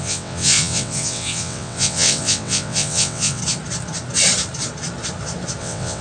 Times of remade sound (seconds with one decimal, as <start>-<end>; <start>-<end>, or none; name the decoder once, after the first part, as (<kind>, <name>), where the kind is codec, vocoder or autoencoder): 0.0-3.4 (vocoder, WaveNeXt); 5.6-6.0